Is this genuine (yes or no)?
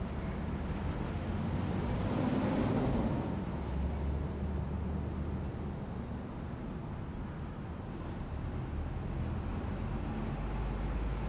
yes